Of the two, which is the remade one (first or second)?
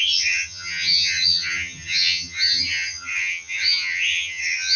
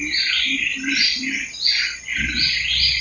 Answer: first